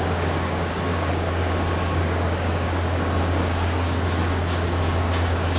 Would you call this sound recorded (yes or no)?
no